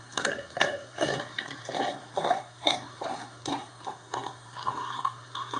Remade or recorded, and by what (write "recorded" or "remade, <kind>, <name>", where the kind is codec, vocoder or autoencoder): remade, codec, SNAC